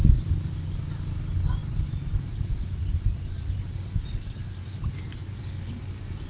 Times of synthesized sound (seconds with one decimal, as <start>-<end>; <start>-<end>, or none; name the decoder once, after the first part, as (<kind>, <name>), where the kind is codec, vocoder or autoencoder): none